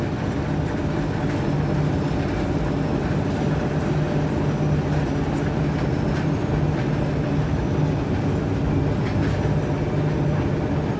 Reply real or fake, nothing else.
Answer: real